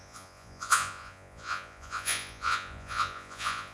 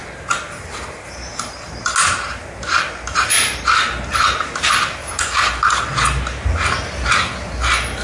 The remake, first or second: first